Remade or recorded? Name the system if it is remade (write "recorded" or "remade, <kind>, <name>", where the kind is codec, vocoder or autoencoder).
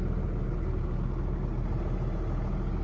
recorded